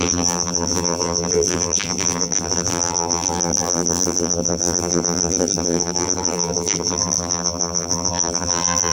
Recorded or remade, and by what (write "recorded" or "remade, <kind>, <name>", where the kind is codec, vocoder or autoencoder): remade, vocoder, BigVGAN v2